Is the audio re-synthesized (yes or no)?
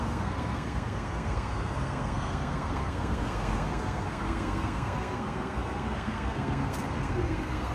yes